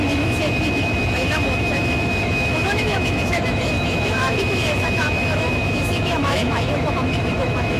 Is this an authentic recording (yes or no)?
no